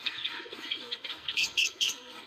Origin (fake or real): fake